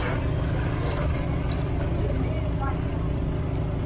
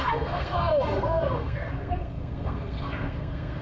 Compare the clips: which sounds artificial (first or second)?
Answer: second